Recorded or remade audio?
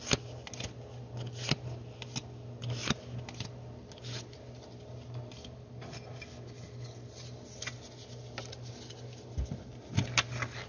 recorded